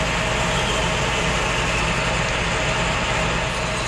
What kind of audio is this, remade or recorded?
recorded